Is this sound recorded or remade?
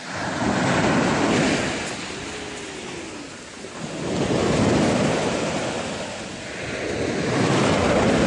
recorded